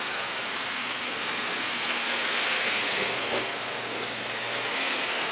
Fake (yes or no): yes